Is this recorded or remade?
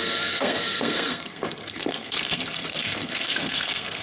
remade